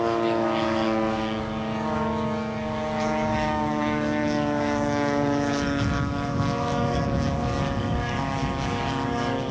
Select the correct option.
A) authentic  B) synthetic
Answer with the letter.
B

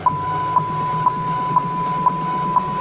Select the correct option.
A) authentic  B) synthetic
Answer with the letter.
A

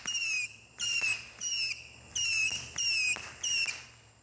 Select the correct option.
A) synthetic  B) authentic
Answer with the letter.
B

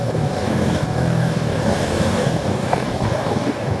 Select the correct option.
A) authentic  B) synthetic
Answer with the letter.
B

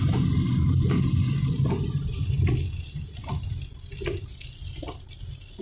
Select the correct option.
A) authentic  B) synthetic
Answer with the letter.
A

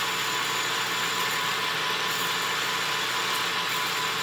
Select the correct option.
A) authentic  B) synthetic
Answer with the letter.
A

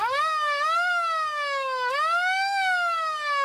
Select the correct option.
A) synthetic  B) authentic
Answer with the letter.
A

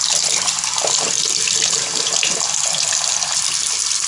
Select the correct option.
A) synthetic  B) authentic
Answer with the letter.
B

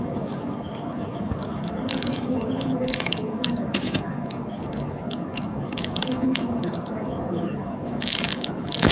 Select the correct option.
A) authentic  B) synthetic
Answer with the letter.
B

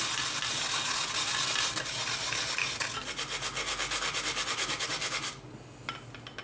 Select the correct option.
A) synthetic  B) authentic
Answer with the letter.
B